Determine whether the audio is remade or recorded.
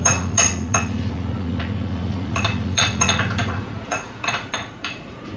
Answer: remade